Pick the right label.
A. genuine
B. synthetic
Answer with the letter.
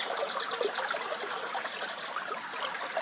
A